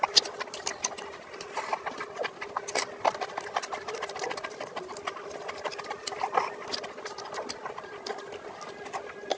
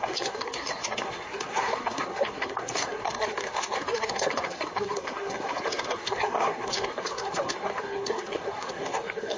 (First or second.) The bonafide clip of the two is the first